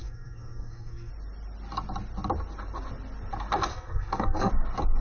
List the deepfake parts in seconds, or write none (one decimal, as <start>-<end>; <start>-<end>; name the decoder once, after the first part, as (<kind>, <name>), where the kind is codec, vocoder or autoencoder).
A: 0.0-1.1 (codec, SNAC); 3.7-4.5